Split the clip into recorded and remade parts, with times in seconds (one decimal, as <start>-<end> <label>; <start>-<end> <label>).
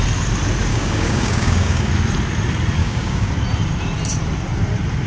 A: 0.0-0.7 recorded; 0.7-1.9 remade; 1.9-2.8 recorded; 2.8-3.3 remade; 3.3-5.1 recorded